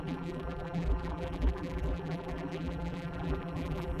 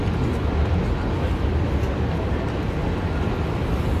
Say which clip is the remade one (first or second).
first